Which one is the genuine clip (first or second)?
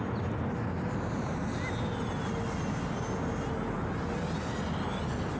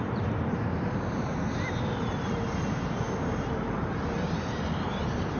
first